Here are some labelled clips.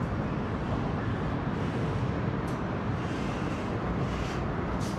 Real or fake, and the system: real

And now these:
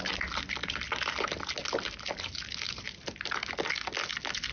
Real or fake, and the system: real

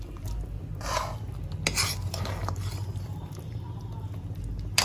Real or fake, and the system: real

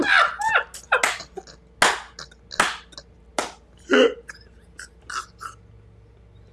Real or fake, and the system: real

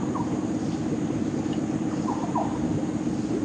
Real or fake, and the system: real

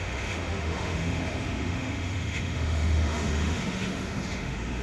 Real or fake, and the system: fake, autoencoder, DAC-VAE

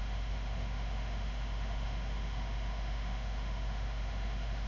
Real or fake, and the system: fake, autoencoder, DAC-VAE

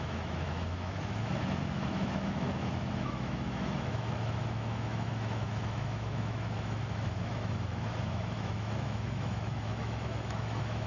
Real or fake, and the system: fake, autoencoder, DAC-VAE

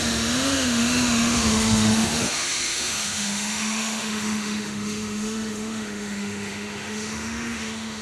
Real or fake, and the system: fake, autoencoder, DAC-VAE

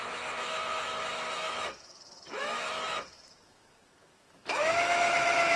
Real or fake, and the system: fake, autoencoder, DAC-VAE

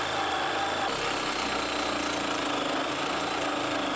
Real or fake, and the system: real